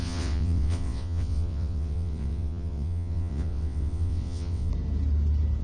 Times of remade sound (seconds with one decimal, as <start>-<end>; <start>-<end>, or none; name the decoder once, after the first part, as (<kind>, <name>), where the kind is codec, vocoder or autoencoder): 0.0-4.7 (vocoder, WaveNeXt)

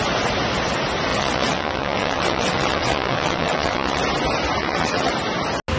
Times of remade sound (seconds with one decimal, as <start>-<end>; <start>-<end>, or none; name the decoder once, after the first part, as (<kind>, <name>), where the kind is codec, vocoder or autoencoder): 1.1-4.0 (vocoder, WaveNeXt); 4.6-5.1